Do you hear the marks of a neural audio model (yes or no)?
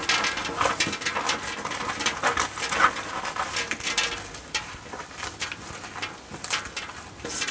no